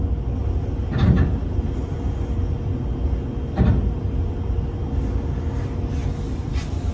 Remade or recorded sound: recorded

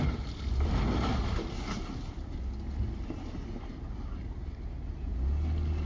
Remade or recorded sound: recorded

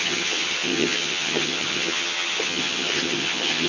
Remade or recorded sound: remade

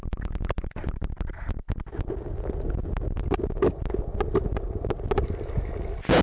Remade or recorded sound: recorded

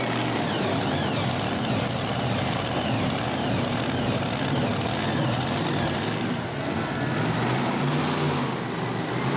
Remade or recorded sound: recorded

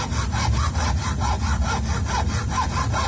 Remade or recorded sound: recorded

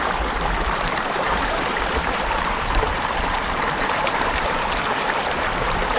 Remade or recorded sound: remade